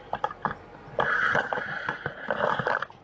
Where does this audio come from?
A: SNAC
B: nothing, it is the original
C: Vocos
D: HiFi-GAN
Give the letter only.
B